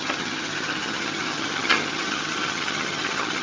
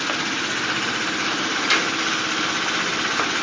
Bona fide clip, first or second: second